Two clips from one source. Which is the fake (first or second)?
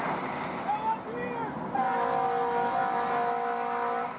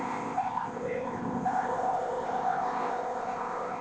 second